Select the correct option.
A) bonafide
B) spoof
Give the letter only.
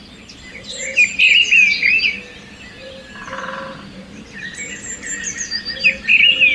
A